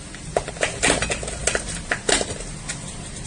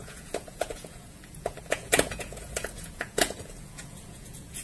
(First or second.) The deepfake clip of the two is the second